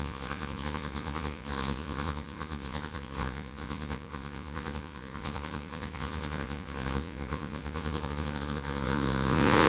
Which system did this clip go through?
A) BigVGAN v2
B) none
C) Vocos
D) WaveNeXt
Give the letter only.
C